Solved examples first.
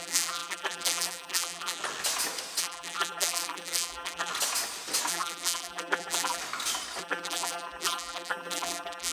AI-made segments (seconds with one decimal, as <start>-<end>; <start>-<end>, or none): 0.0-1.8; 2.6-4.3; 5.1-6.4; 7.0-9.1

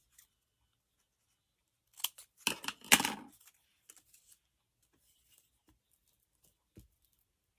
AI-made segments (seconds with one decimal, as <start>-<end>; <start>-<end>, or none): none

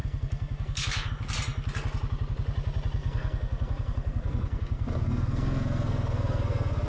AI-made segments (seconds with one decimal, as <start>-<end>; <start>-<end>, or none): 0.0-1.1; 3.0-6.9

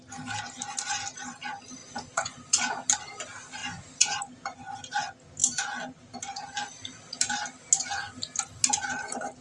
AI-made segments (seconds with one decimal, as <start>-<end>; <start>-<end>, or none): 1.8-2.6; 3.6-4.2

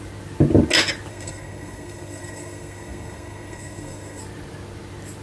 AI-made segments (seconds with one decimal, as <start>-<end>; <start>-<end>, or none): 1.1-4.2